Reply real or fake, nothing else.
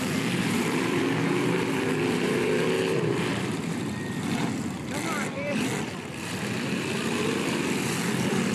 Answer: fake